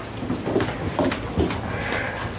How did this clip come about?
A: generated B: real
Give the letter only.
B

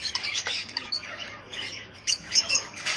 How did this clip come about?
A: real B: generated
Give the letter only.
B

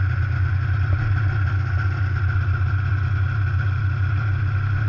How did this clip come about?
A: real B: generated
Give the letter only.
A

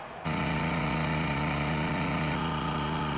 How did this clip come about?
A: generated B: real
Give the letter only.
A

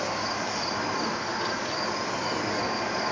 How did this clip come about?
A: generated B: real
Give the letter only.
B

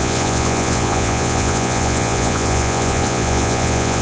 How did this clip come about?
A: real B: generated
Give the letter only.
B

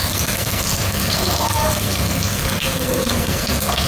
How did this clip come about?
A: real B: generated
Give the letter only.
B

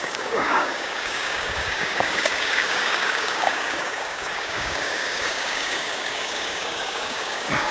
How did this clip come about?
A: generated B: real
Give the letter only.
A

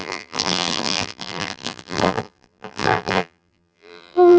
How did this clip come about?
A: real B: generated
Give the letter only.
B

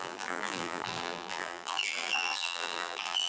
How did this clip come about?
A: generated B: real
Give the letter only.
A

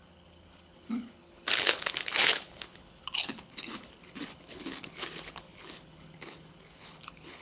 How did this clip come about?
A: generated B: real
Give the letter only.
A